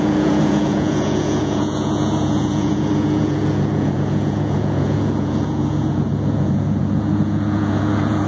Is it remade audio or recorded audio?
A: remade